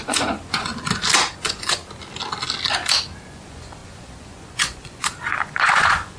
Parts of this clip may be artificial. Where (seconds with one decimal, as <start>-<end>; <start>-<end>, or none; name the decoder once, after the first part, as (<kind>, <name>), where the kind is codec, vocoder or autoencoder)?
0.0-0.7 (vocoder, Vocos); 1.3-1.8; 3.2-6.2